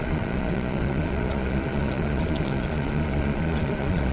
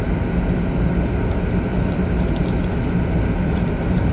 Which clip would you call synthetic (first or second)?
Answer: first